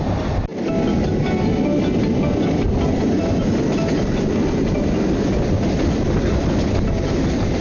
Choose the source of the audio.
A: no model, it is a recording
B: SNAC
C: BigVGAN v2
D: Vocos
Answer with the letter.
A